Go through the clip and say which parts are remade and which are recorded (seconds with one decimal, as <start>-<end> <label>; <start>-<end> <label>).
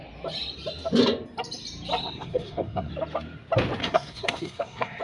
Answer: 0.0-2.0 recorded; 2.0-2.9 remade; 2.9-3.8 recorded; 3.8-5.0 remade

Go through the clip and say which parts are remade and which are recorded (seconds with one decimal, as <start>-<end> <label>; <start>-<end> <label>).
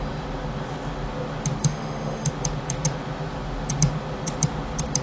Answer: 0.0-1.6 recorded; 1.6-2.3 remade; 2.3-5.0 recorded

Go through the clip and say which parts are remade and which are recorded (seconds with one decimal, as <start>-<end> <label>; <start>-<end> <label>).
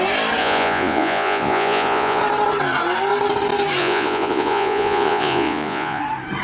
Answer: 0.0-0.4 recorded; 0.4-2.2 remade; 2.2-3.8 recorded; 3.8-6.0 remade; 6.0-6.4 recorded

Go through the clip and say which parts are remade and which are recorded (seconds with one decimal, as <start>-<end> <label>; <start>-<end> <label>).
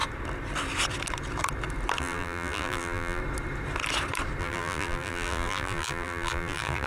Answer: 0.0-2.0 recorded; 2.0-3.2 remade; 3.2-4.4 recorded; 4.4-6.9 remade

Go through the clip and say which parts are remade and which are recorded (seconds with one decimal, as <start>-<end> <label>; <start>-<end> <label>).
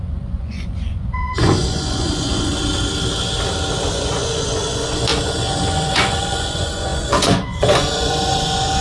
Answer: 0.0-2.5 remade; 2.5-3.9 recorded; 3.9-8.8 remade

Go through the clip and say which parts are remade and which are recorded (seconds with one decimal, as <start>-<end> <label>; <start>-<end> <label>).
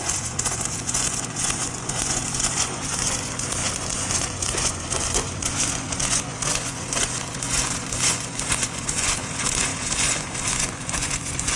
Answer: 0.0-11.6 remade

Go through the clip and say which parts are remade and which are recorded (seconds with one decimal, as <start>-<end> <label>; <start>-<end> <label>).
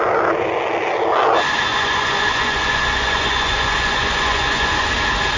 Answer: 0.0-1.7 recorded; 1.7-4.9 remade; 4.9-5.4 recorded